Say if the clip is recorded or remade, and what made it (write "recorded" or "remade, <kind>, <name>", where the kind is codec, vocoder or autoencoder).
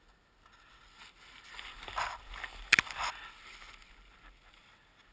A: recorded